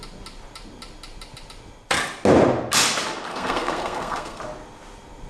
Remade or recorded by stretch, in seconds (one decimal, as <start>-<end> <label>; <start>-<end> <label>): 0.0-3.3 recorded; 3.3-4.4 remade; 4.4-5.3 recorded

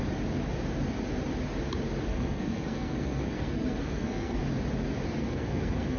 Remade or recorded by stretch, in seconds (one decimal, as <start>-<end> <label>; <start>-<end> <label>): 0.0-2.1 recorded; 2.1-4.4 remade; 4.4-5.2 recorded; 5.2-6.0 remade